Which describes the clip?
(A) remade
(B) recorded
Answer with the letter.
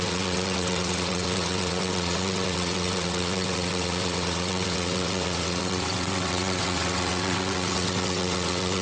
A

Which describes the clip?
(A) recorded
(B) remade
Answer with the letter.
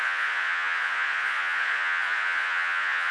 B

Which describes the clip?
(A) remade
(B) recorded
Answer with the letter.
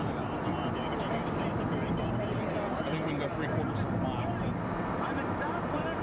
B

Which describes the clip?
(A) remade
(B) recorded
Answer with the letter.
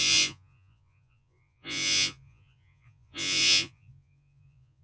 A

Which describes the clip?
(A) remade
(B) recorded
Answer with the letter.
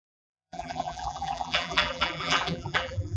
A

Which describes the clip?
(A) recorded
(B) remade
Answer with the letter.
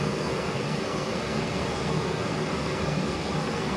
B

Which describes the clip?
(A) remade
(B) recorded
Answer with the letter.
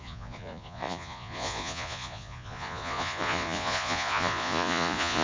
A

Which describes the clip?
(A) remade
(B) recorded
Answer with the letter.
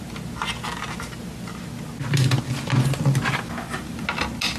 B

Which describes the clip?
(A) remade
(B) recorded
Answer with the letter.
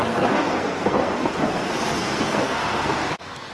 A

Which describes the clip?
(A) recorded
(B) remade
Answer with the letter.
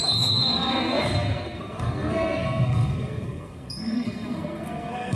B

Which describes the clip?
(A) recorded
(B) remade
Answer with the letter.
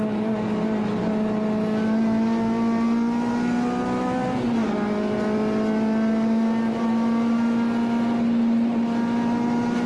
A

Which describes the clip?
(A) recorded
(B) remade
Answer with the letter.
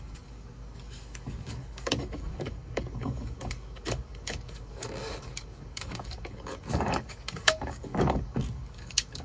B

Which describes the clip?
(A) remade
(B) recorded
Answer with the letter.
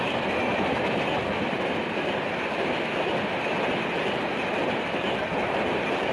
B